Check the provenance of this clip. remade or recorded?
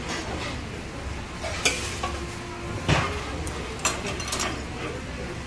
recorded